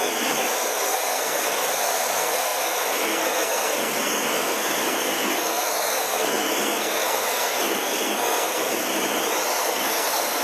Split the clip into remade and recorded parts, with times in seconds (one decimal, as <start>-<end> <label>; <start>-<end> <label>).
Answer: 0.0-8.9 remade; 8.9-9.6 recorded; 9.6-10.4 remade